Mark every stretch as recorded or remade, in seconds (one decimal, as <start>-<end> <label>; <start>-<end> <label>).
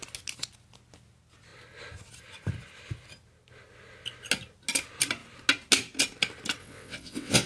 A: 0.0-6.6 recorded; 6.6-7.5 remade